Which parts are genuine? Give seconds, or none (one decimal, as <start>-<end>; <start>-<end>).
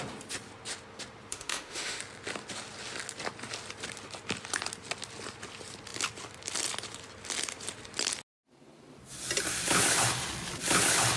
0.0-1.3; 2.0-11.2